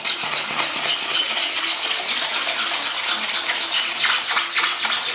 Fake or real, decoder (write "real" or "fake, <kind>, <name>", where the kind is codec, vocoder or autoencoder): real